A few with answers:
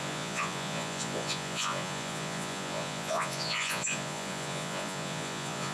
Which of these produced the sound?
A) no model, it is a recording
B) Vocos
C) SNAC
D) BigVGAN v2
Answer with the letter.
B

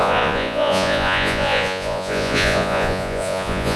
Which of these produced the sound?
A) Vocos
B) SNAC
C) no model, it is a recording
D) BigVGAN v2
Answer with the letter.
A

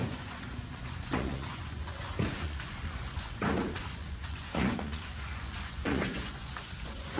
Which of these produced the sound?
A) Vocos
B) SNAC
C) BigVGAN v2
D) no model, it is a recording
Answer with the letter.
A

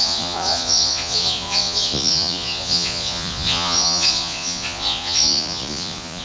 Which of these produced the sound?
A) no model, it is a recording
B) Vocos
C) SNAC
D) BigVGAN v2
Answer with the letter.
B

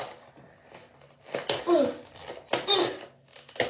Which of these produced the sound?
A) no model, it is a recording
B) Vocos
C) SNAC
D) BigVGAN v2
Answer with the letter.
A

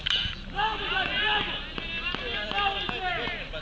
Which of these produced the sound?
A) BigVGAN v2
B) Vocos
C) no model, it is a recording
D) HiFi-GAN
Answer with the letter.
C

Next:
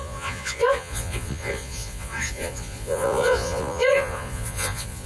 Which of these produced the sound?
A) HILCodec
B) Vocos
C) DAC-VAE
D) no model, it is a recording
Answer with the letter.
B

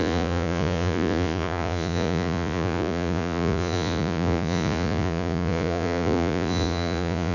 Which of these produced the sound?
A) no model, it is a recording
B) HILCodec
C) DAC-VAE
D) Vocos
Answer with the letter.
D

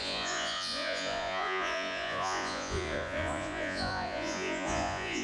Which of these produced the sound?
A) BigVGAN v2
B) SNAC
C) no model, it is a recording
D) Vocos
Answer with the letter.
D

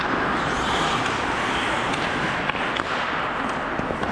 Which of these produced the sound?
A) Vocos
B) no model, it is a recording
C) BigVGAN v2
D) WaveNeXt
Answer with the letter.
B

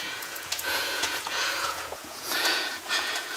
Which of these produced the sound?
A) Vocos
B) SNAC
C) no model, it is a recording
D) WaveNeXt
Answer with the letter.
A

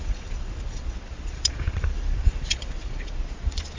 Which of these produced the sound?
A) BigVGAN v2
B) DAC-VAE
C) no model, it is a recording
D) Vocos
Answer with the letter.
D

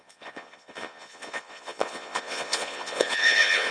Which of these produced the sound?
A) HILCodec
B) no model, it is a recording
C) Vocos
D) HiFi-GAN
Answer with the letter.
C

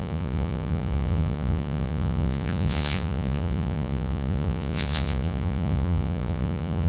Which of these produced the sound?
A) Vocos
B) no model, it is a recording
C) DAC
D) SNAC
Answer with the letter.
A